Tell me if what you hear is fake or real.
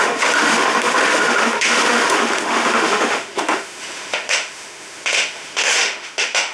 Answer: fake